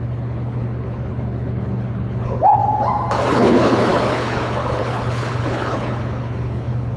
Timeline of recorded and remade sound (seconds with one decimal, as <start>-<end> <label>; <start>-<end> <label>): 0.0-2.6 remade; 2.6-3.3 recorded; 3.3-7.0 remade